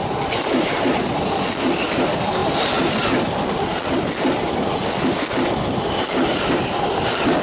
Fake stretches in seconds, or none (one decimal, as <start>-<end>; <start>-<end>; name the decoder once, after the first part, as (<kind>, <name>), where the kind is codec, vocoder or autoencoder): 0.0-0.8 (vocoder, BigVGAN v2)